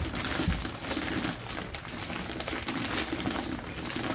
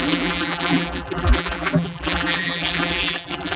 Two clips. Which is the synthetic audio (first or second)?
second